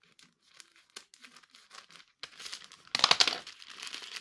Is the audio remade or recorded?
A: recorded